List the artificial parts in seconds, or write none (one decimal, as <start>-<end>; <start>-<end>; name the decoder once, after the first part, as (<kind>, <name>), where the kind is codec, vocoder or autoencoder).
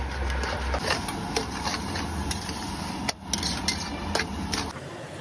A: none